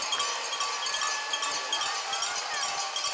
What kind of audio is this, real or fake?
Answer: real